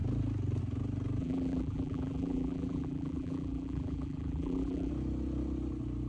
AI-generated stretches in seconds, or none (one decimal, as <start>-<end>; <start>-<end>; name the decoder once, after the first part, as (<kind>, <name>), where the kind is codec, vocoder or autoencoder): 1.2-4.9 (vocoder, BigVGAN v2)